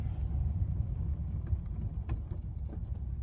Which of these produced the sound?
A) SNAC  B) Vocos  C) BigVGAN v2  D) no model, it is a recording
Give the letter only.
D